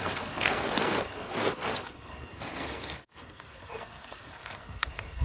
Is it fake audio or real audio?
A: fake